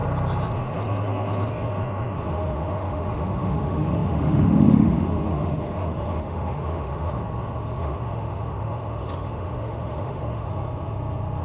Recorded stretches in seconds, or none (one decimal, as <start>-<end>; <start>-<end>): 0.0-2.3; 7.2-7.8; 10.5-11.4